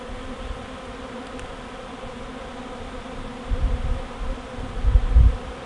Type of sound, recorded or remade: recorded